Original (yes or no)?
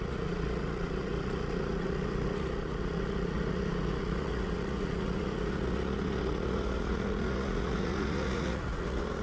no